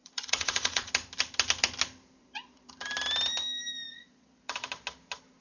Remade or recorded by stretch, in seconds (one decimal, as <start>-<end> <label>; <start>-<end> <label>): 0.0-0.9 remade; 0.9-2.2 recorded; 2.2-2.7 remade; 2.7-3.9 recorded; 3.9-4.7 remade; 4.7-5.4 recorded